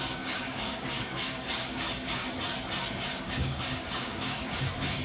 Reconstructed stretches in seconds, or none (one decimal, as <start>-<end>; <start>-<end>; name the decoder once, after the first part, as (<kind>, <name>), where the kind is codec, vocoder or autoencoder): 0.0-2.2 (codec, DAC); 2.9-5.0